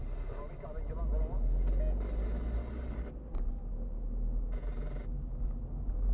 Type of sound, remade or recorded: recorded